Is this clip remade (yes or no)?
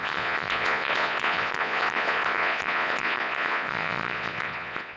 yes